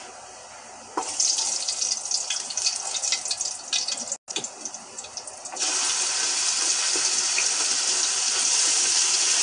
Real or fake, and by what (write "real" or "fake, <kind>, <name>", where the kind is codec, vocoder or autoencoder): real